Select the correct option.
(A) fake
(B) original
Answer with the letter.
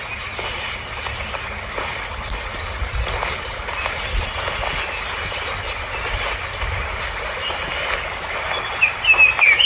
B